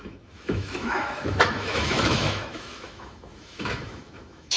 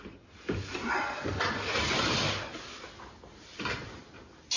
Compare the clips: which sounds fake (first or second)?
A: first